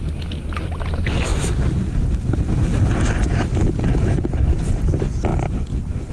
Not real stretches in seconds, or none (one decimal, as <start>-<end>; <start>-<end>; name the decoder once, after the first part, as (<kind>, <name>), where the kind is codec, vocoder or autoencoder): none